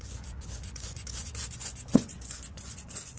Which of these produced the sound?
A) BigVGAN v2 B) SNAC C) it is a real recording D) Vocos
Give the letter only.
D